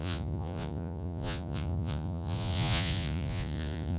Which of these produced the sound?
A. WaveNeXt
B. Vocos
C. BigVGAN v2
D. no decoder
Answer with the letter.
B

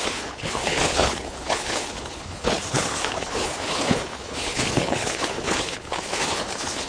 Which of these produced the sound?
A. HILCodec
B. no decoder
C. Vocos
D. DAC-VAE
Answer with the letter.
A